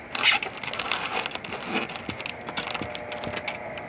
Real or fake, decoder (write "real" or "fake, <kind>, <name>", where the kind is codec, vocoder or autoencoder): real